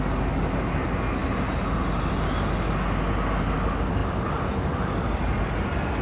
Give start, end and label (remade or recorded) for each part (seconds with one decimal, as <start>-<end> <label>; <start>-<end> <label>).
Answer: 0.0-6.0 recorded